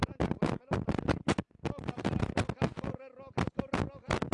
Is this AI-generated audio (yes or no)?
no